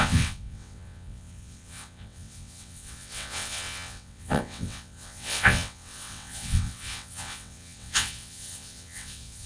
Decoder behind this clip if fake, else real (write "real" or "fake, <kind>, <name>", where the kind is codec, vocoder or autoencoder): fake, vocoder, WaveNeXt